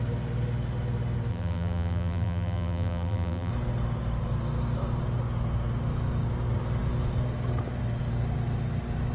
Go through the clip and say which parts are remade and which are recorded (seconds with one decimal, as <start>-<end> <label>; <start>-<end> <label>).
0.0-1.3 recorded; 1.3-3.5 remade; 3.5-9.1 recorded